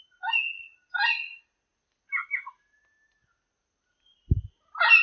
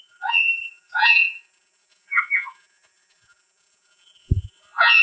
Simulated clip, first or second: second